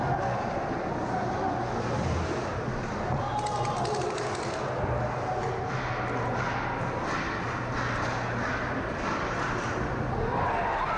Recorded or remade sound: recorded